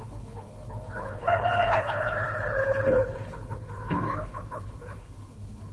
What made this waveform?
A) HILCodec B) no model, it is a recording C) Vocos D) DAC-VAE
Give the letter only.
A